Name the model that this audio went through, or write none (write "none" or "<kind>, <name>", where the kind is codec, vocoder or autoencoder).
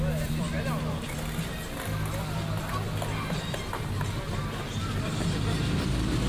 none